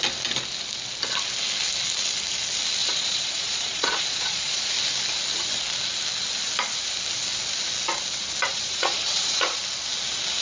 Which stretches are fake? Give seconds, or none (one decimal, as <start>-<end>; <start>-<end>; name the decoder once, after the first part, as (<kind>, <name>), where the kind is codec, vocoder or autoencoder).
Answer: 2.8-4.7 (vocoder, Vocos); 8.5-9.6